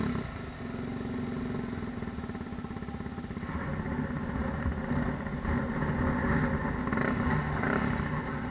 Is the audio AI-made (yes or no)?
no